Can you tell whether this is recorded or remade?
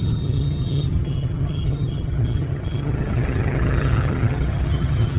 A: remade